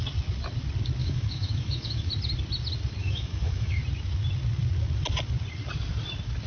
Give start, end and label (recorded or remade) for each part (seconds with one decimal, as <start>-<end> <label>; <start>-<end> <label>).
0.0-1.0 recorded; 1.0-2.1 remade; 2.1-3.0 recorded; 3.0-3.8 remade; 3.8-6.5 recorded